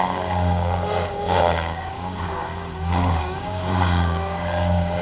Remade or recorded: remade